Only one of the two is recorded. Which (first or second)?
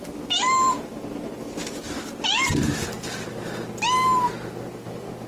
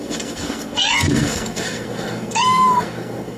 first